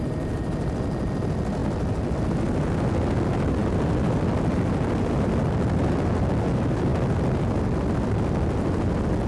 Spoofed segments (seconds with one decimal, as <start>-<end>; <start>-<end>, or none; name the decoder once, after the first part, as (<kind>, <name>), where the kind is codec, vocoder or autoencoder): none